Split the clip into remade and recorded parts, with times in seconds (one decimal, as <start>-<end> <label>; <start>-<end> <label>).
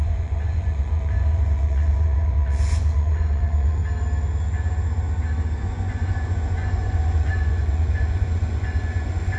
0.0-3.8 remade; 3.8-5.6 recorded; 5.6-9.4 remade